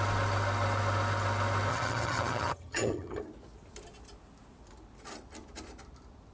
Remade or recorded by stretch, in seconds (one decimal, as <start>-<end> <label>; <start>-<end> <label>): 0.0-1.7 recorded; 1.7-3.2 remade; 3.2-6.3 recorded